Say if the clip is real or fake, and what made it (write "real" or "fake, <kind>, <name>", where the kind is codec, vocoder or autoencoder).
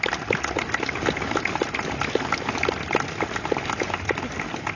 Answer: real